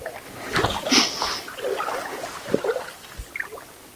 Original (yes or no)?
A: yes